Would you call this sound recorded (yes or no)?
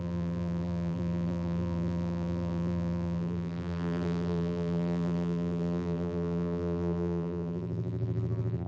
no